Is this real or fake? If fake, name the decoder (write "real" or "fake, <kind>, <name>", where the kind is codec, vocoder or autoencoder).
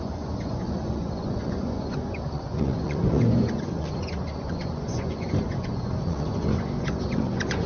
fake, vocoder, Vocos